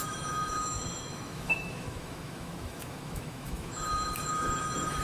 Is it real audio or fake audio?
fake